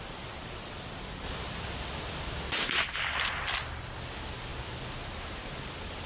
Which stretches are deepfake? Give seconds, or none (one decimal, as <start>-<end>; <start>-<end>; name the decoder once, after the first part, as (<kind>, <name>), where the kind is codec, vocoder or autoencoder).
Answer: none